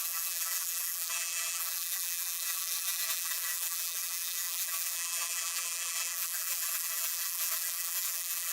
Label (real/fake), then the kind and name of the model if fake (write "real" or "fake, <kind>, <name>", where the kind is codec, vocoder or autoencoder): fake, vocoder, BigVGAN v2